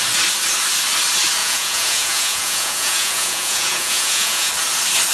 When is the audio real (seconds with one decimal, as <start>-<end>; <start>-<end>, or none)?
0.0-1.4; 4.5-5.1